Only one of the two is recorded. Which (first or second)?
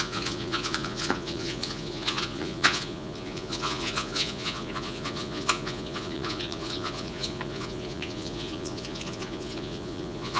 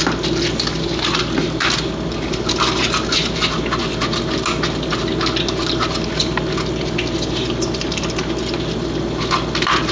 second